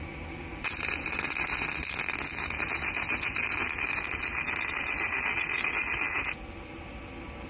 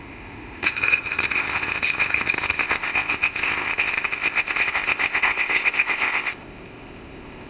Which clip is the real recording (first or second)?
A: first